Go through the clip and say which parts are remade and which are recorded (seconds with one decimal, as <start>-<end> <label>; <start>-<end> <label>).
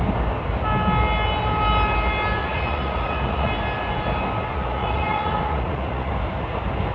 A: 0.0-2.4 recorded; 2.4-3.5 remade; 3.5-4.5 recorded; 4.5-6.1 remade; 6.1-6.9 recorded